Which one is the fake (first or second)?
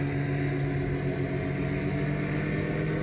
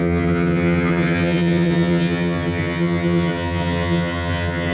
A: second